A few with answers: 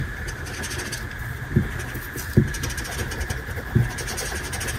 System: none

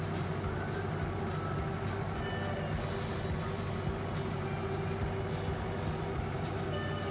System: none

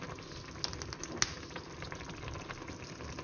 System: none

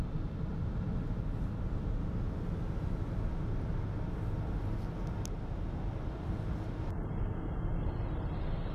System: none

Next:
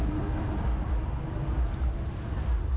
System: none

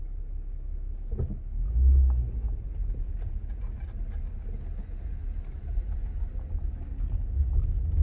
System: none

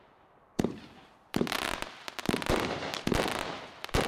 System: vocoder, BigVGAN v2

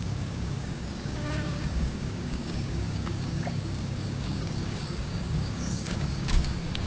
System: codec, DAC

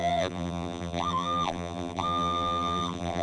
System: vocoder, BigVGAN v2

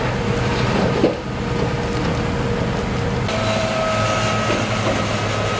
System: none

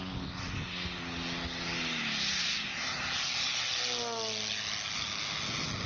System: none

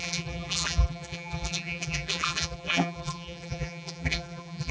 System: vocoder, BigVGAN v2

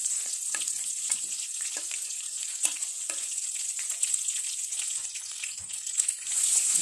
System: vocoder, Vocos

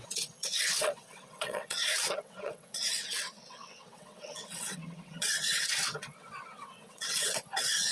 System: vocoder, WaveNeXt